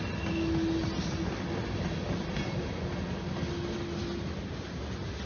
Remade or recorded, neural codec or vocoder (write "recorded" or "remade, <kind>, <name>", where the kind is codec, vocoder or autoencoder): recorded